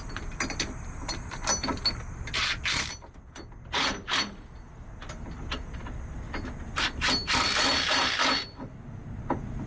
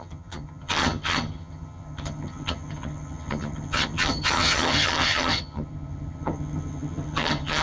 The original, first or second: first